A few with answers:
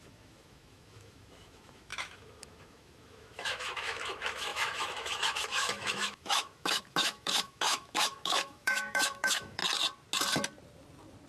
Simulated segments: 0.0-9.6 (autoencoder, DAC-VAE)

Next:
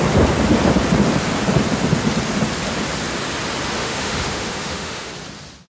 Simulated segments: 3.8-5.1 (autoencoder, DAC-VAE)

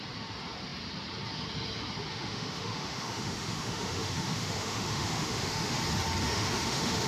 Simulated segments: 2.1-5.8 (autoencoder, DAC-VAE); 6.2-7.1

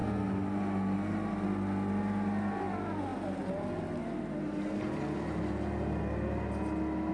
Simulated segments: none

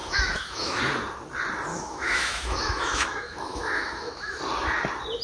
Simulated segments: 0.0-0.8 (autoencoder, DAC-VAE); 1.7-4.4

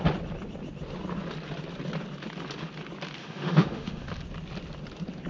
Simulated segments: 3.2-4.1 (autoencoder, DAC-VAE)